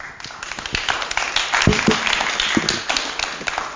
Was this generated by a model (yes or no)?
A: no